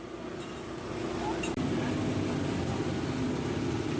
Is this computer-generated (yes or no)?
no